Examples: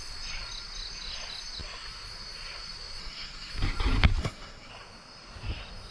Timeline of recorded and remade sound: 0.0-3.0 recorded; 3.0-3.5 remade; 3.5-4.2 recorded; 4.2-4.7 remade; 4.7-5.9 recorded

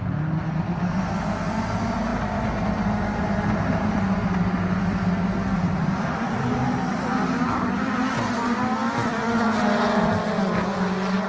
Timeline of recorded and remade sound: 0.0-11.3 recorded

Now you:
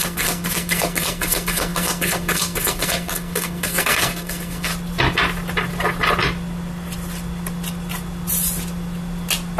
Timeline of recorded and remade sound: 0.0-4.7 remade; 4.7-9.6 recorded